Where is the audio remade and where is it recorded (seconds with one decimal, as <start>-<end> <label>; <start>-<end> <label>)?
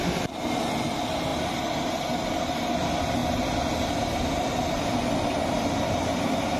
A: 0.0-6.6 recorded